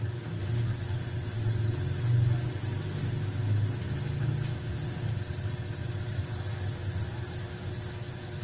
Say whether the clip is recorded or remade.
recorded